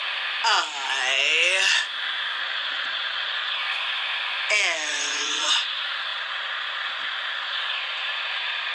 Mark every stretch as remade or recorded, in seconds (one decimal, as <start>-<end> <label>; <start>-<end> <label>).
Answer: 0.0-2.4 recorded; 2.4-3.6 remade; 3.6-4.9 recorded; 4.9-8.7 remade